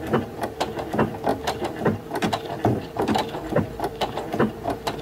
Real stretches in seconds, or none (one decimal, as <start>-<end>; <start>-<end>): 0.0-5.0